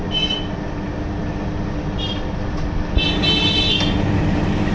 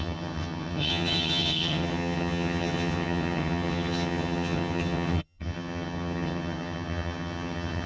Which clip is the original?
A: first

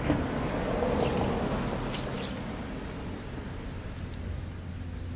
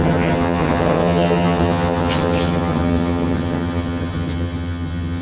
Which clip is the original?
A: first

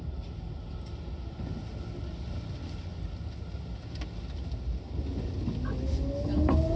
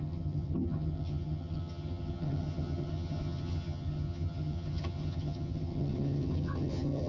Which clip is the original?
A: first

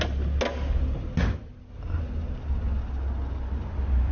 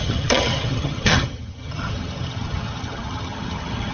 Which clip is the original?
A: first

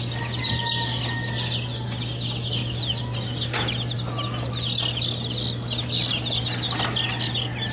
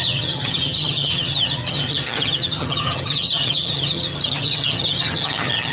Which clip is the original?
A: first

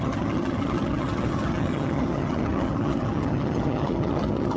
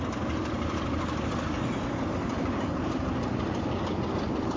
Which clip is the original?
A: second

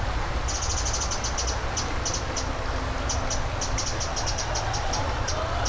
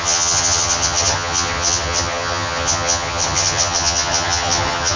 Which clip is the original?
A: first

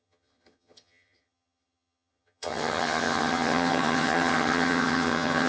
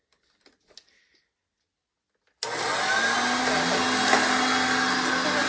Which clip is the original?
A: second